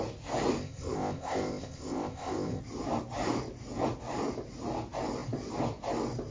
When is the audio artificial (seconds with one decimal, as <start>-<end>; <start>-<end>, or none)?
0.6-2.6